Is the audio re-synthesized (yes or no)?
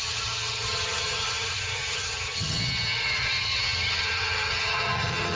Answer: yes